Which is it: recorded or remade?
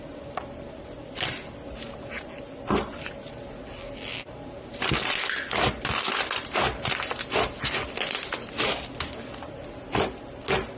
recorded